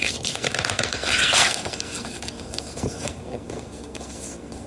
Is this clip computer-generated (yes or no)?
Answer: yes